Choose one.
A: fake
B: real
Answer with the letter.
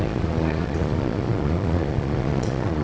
A